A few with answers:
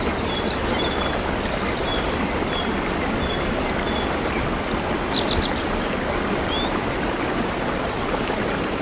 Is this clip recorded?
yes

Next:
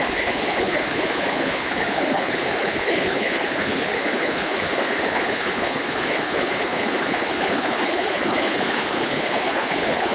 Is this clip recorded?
no